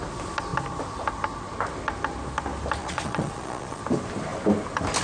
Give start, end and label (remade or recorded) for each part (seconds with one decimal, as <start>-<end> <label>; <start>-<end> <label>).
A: 0.0-2.8 recorded; 2.8-3.8 remade; 3.8-5.0 recorded